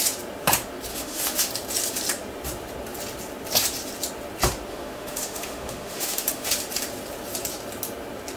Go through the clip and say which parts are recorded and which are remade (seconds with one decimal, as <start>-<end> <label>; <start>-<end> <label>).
0.0-0.9 recorded; 0.9-1.5 remade; 1.5-4.7 recorded; 4.7-6.5 remade; 6.5-8.4 recorded